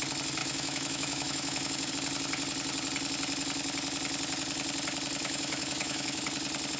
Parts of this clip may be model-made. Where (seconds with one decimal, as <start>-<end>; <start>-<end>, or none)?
0.4-1.9; 5.2-6.2